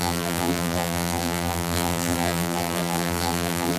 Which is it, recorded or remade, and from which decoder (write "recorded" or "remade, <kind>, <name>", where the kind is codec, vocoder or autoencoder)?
remade, vocoder, BigVGAN v2